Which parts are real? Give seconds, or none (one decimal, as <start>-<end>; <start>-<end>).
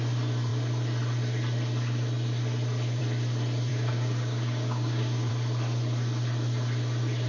0.0-3.7; 5.3-7.3